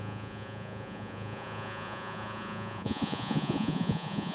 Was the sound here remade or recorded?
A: remade